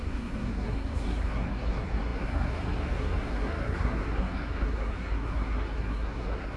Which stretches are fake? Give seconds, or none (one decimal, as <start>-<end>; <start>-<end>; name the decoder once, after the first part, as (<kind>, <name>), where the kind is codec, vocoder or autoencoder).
0.0-6.6 (codec, SNAC)